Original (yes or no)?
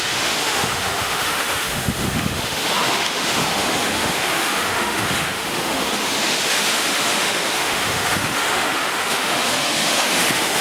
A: no